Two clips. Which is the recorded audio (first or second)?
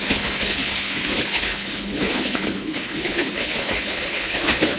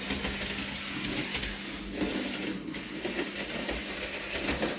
second